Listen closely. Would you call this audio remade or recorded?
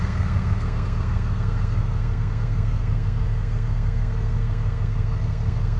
remade